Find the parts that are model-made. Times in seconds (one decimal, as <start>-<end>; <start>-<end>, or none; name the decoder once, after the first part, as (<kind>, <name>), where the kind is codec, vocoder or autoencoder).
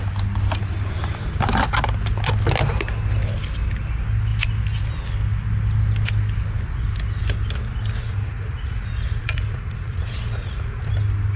8.0-10.8 (vocoder, Vocos)